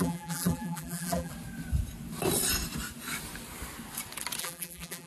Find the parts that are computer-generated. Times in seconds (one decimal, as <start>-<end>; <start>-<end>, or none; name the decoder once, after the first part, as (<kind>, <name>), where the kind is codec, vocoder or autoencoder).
0.0-1.3 (vocoder, BigVGAN v2); 4.4-5.1